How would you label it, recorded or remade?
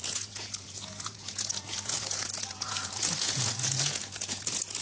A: remade